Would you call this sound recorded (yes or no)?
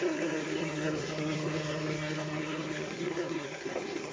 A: no